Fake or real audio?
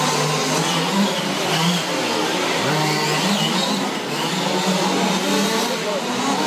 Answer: real